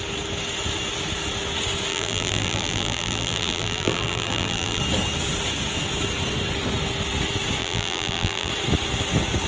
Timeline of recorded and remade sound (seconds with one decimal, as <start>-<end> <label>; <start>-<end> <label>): 0.0-1.9 recorded; 1.9-4.8 remade; 4.8-7.6 recorded; 7.6-8.5 remade; 8.5-9.5 recorded